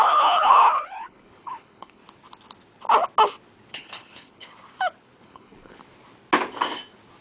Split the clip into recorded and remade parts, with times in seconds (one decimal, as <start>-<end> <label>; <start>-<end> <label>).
0.0-2.0 remade; 2.0-3.7 recorded; 3.7-4.5 remade; 4.5-5.2 recorded; 5.2-5.8 remade; 5.8-7.2 recorded